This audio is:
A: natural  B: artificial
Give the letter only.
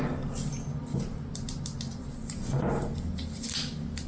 A